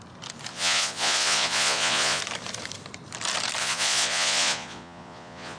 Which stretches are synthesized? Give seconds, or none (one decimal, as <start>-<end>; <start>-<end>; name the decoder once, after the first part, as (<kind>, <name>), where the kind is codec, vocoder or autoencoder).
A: 0.5-2.2 (vocoder, Vocos); 3.6-5.6